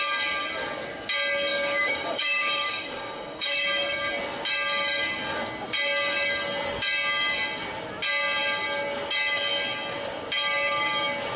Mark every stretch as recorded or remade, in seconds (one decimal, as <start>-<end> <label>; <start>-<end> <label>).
0.0-1.5 recorded; 1.5-4.1 remade; 4.1-11.4 recorded